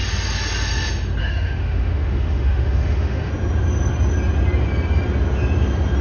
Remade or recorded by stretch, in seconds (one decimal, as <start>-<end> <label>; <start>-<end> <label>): 0.0-1.2 recorded; 1.2-3.3 remade; 3.3-6.0 recorded